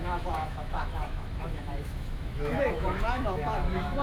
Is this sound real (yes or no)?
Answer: no